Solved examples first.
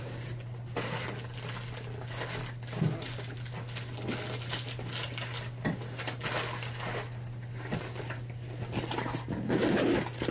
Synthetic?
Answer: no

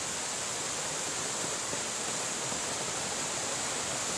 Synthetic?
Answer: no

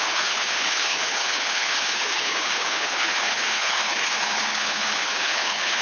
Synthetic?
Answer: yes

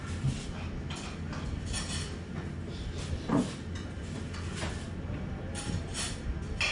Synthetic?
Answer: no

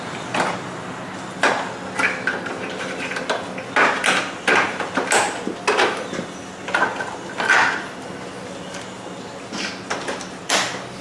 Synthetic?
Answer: no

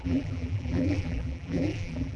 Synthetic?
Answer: yes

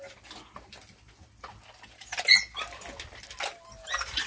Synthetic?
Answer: no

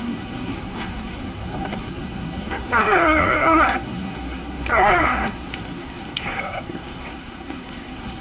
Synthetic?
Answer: yes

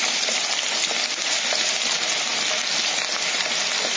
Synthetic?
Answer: no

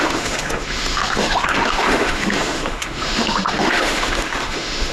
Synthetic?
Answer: yes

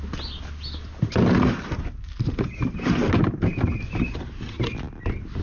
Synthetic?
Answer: no